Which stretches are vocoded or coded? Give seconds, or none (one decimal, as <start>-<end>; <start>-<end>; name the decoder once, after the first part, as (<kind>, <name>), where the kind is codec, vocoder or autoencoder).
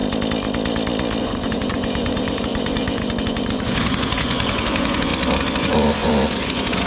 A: 1.2-5.1 (vocoder, Vocos); 5.6-6.9